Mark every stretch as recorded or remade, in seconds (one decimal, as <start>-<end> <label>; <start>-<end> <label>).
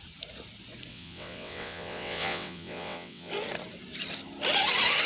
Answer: 0.0-0.9 recorded; 0.9-3.3 remade; 3.3-5.1 recorded